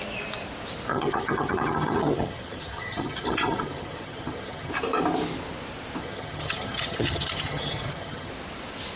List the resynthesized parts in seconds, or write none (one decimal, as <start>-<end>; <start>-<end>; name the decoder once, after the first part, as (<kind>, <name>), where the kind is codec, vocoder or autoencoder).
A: 0.9-4.7 (vocoder, HiFi-GAN); 6.0-8.3